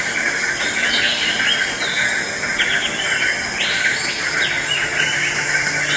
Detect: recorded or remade recorded